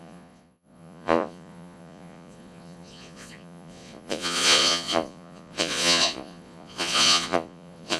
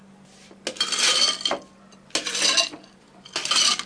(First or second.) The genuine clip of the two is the second